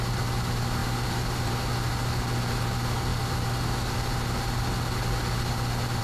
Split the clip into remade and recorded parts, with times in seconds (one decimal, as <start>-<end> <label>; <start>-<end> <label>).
0.0-6.0 recorded